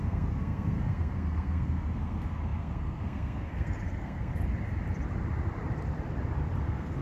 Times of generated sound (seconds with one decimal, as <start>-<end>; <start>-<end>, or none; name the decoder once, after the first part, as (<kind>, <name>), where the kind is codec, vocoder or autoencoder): 0.0-4.3 (codec, SNAC); 6.6-7.0